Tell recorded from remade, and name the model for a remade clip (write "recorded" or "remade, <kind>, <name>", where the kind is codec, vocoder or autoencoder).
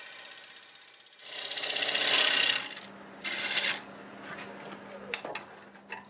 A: recorded